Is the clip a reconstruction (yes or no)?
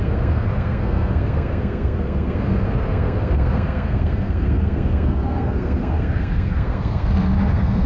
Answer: yes